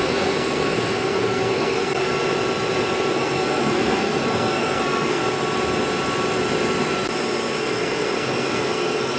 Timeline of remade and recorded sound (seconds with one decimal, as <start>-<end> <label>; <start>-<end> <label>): 0.0-2.1 remade; 2.1-3.1 recorded; 3.1-5.2 remade; 5.2-7.6 recorded; 7.6-9.2 remade